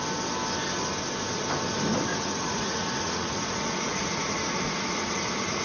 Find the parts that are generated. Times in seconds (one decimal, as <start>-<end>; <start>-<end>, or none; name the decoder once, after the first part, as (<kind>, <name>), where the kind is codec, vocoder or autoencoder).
2.1-5.6 (vocoder, Vocos)